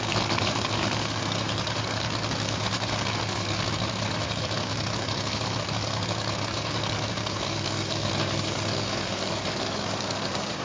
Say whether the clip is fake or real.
fake